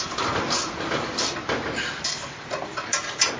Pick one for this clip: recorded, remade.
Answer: recorded